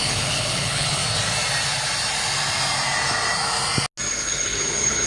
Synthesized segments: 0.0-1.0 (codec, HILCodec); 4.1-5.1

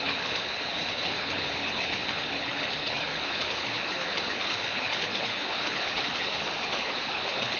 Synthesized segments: 0.0-7.6 (codec, HILCodec)

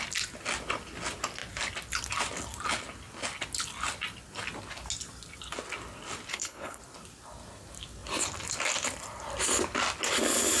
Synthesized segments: 6.3-6.8 (codec, HILCodec)